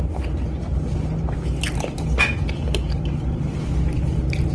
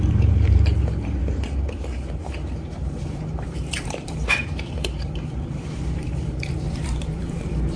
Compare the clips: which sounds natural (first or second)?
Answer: first